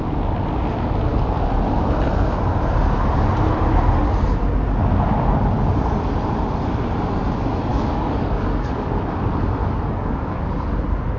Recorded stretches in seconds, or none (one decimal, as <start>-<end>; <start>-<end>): 0.0-7.7; 8.9-9.6; 10.5-11.2